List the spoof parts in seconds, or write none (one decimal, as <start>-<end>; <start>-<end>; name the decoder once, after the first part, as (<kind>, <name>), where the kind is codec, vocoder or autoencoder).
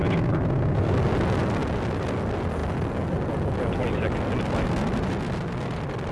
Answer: none